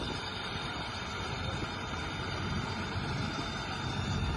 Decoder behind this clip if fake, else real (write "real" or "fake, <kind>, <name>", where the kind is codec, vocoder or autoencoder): real